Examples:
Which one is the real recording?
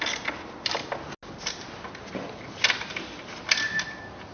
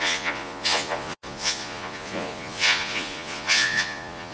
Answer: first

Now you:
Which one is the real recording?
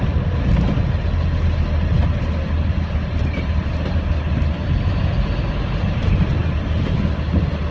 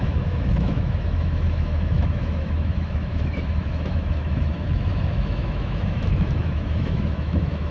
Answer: first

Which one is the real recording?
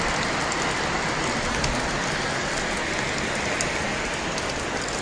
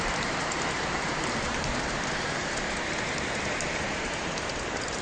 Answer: first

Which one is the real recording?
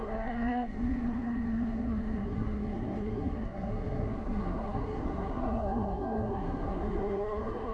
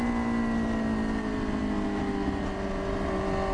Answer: second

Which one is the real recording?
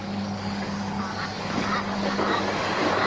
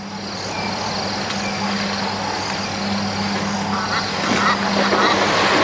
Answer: second